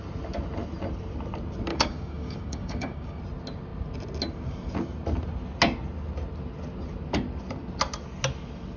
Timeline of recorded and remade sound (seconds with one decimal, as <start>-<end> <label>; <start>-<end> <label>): 0.0-1.7 recorded; 1.7-3.2 remade; 3.2-8.8 recorded